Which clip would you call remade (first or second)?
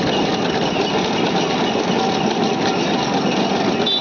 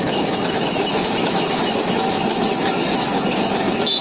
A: second